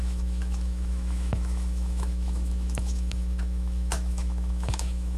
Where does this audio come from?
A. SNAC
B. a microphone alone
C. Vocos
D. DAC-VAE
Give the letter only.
D